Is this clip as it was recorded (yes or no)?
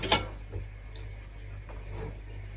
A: yes